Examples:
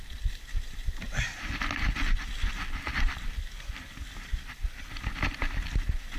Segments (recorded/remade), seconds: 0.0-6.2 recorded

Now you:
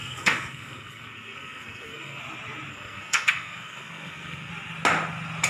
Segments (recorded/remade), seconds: 0.0-2.2 remade; 2.2-2.7 recorded; 2.7-4.5 remade; 4.5-5.5 recorded

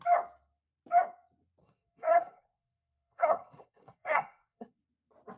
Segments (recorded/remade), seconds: 0.0-1.6 recorded; 1.6-4.8 remade; 4.8-5.4 recorded

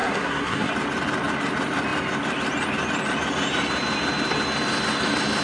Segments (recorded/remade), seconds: 0.0-0.7 remade; 0.7-5.4 recorded

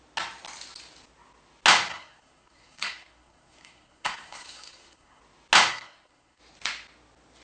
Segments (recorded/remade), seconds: 0.0-1.9 recorded; 1.9-5.2 remade; 5.2-5.7 recorded; 5.7-6.4 remade; 6.4-7.4 recorded